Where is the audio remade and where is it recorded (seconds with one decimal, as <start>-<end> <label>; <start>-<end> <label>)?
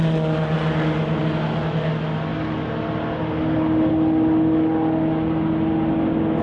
0.0-6.4 recorded